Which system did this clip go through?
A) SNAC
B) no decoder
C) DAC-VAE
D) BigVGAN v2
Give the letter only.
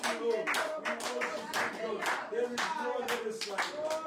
B